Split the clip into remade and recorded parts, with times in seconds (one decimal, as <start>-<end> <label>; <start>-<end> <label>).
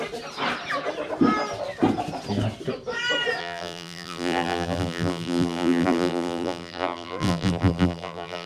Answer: 0.0-3.4 recorded; 3.4-8.5 remade